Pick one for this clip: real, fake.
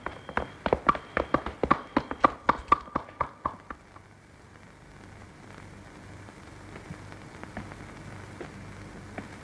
real